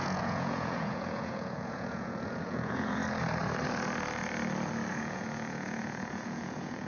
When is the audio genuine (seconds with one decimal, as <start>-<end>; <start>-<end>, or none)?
3.0-4.9